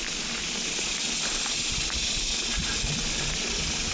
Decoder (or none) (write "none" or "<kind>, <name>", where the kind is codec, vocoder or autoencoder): none